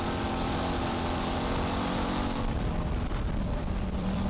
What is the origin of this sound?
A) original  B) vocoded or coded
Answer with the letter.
B